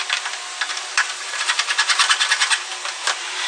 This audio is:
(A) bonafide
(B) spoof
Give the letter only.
A